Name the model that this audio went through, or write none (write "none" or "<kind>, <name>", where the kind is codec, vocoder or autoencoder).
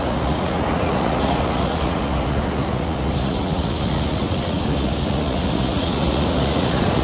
vocoder, Vocos